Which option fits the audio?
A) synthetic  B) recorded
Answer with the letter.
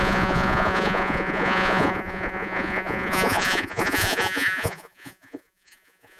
A